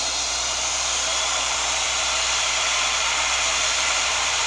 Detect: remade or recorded remade